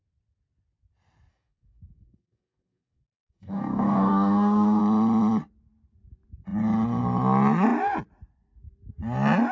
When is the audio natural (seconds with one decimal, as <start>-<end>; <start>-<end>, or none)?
0.0-1.3; 4.8-9.5